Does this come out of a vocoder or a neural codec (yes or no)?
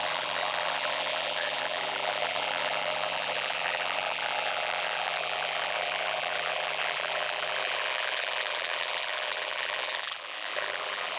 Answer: yes